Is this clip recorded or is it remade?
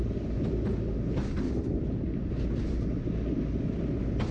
recorded